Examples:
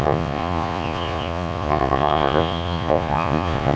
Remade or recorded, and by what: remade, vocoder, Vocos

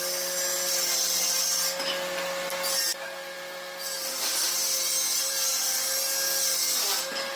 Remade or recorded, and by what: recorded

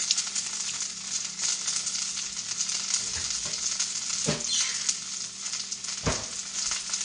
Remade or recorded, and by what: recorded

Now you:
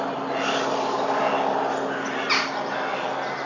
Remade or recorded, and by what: recorded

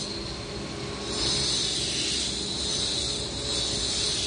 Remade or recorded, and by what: recorded